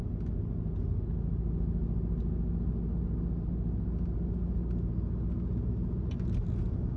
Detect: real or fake real